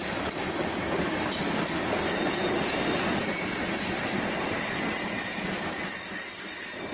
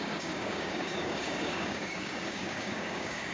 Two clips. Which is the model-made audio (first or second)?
second